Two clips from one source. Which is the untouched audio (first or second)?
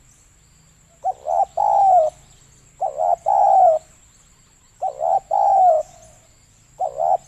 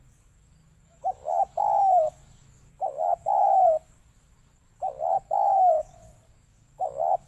first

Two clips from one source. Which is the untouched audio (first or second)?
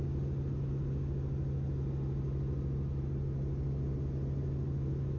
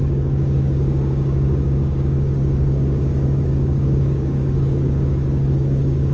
first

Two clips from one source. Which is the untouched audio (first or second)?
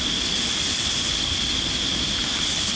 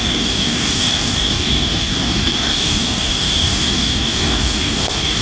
first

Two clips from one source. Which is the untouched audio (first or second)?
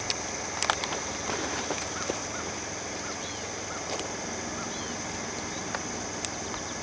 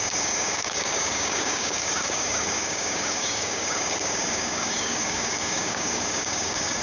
first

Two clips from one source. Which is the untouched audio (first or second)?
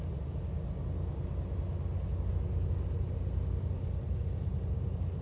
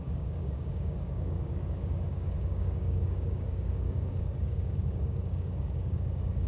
first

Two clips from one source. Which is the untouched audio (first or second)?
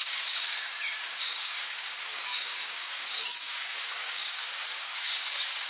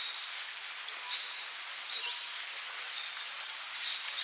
second